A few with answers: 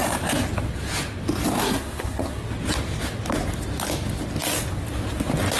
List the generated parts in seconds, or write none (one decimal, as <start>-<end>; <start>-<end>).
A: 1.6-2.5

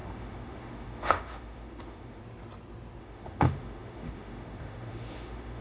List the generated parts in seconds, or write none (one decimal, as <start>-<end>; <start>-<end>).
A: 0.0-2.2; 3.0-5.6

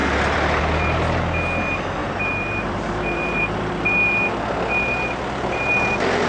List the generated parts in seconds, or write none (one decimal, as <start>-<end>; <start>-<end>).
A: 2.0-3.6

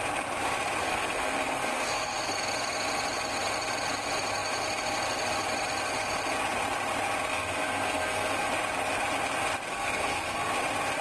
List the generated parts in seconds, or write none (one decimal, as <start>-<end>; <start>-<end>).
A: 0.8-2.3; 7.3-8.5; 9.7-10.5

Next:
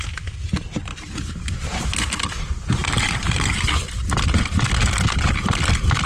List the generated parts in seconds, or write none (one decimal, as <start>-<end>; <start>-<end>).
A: 0.9-2.3; 2.8-4.0

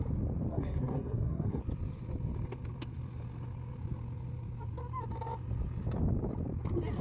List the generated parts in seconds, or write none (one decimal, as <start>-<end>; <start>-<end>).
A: 0.5-1.6

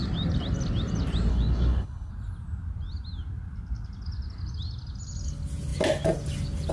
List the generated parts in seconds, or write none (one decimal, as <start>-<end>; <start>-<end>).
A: 1.3-2.1